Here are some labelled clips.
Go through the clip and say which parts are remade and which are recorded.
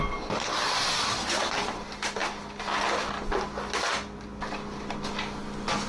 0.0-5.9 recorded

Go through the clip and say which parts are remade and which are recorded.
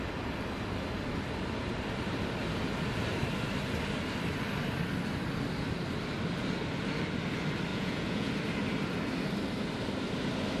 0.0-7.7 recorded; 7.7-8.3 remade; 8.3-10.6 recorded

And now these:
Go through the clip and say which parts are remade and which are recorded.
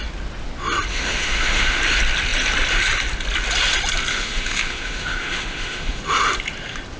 0.0-0.9 recorded; 0.9-1.8 remade; 1.8-4.1 recorded; 4.1-6.0 remade; 6.0-7.0 recorded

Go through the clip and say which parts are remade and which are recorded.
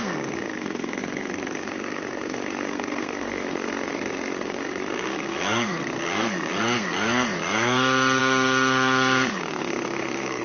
0.0-10.4 remade